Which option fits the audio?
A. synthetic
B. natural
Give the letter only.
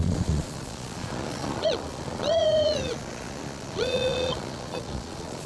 A